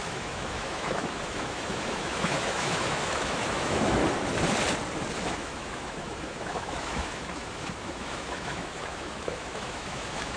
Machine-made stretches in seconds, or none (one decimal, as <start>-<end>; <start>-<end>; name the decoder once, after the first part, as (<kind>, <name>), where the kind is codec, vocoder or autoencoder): 0.0-4.0 (autoencoder, DAC-VAE); 5.1-10.4

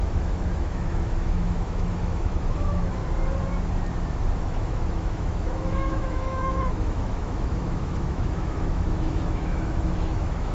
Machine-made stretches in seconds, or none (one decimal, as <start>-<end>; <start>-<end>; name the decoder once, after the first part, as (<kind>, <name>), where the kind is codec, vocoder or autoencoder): 0.0-3.0 (autoencoder, DAC-VAE); 4.4-10.5